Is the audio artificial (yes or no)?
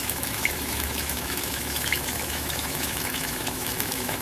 yes